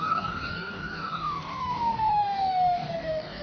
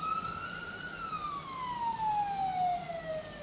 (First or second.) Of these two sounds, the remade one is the first